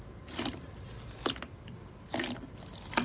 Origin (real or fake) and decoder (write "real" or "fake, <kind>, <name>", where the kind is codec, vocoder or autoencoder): real